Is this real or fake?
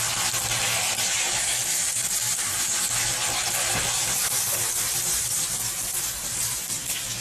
real